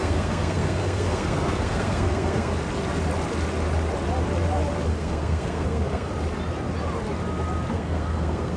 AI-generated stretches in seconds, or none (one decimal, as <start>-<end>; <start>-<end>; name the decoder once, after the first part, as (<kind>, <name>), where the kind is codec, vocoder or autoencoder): 0.0-2.5 (codec, SNAC); 4.9-6.1; 7.7-8.6